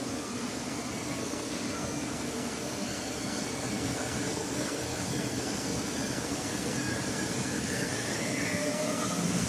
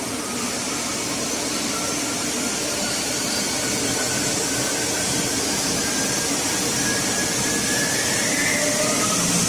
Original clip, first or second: second